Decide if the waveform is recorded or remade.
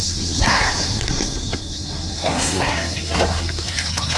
remade